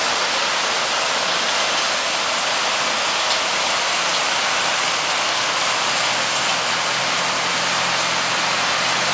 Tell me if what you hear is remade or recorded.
recorded